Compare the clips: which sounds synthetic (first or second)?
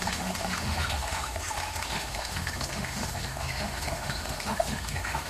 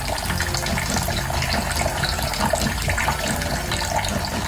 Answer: first